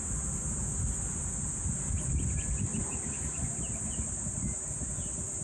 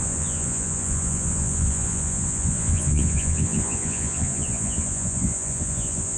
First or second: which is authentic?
first